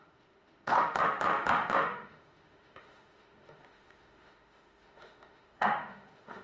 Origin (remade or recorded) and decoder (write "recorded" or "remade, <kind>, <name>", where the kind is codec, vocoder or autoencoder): remade, autoencoder, DAC-VAE